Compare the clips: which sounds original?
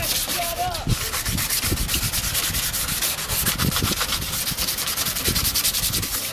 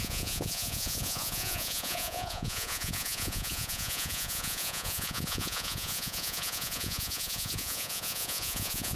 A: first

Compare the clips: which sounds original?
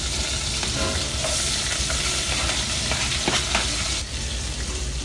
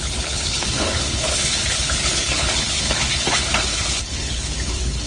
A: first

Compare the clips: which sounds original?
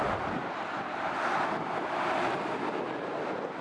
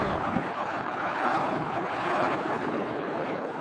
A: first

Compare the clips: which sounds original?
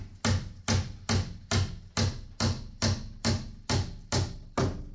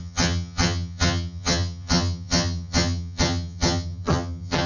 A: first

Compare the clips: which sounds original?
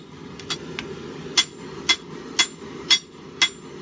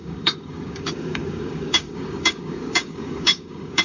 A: first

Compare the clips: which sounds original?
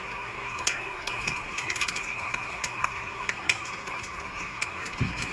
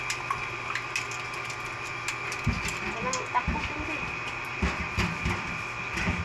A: second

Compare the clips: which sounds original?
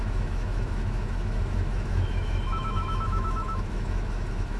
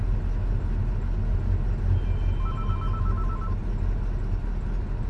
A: second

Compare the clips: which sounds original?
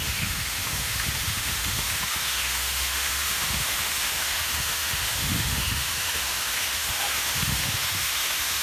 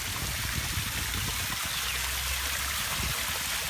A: second